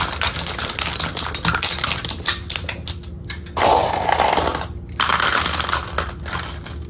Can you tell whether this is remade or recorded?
recorded